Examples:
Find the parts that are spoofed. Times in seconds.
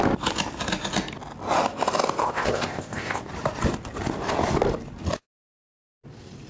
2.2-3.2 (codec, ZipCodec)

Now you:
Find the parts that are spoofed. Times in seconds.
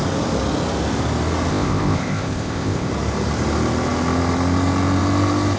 1.5-2.9 (codec, ZipCodec)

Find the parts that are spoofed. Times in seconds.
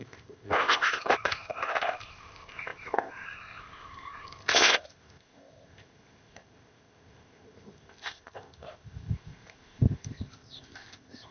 0.0-11.3 (codec, ZipCodec)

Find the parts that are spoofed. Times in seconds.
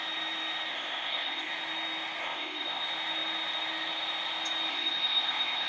0.7-1.5 (codec, ZipCodec); 2.2-2.8; 4.7-5.7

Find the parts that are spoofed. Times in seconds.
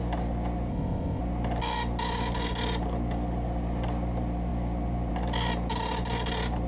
0.7-1.2 (codec, ZipCodec)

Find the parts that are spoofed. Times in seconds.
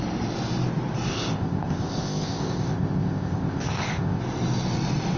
1.1-4.2 (codec, ZipCodec)